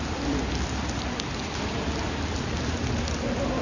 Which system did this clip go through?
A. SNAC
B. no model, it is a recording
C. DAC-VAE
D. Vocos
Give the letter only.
B